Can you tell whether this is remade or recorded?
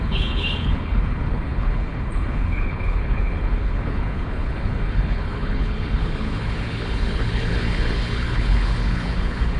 remade